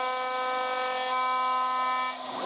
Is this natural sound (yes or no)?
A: yes